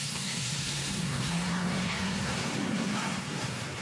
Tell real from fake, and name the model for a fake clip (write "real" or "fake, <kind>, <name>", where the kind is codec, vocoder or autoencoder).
fake, codec, SNAC